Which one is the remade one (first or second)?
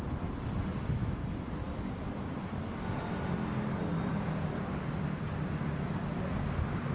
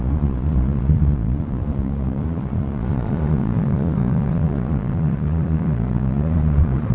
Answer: second